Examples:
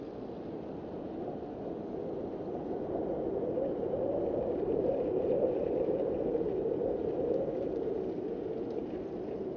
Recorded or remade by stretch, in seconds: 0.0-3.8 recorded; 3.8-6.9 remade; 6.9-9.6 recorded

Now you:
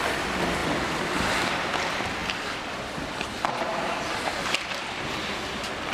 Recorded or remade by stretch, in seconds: 0.0-5.9 recorded

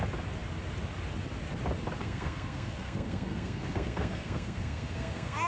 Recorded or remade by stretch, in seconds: 0.0-2.0 recorded; 2.0-5.5 remade

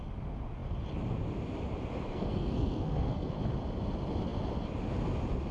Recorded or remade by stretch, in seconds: 0.0-2.1 recorded; 2.1-3.3 remade; 3.3-5.5 recorded

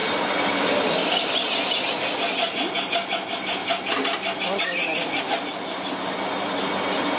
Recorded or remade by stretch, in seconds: 0.0-7.2 recorded

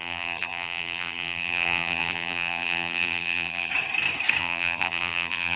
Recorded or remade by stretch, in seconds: 0.0-3.7 remade; 3.7-4.4 recorded; 4.4-5.6 remade

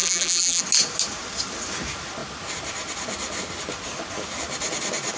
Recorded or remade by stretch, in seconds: 0.0-0.6 remade; 0.6-5.2 recorded

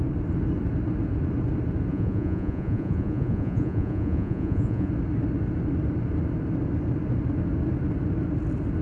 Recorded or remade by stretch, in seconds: 0.0-1.9 recorded; 1.9-4.9 remade; 4.9-8.8 recorded